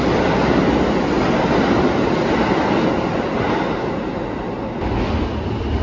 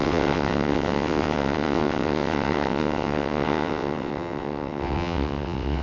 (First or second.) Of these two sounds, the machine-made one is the second